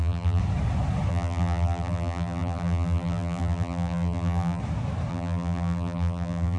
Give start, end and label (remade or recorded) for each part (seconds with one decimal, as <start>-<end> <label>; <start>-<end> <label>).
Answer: 0.0-0.4 remade; 0.4-1.1 recorded; 1.1-4.6 remade; 4.6-5.1 recorded; 5.1-6.6 remade